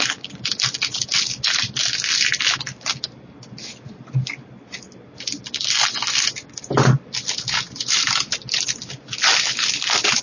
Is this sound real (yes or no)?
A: yes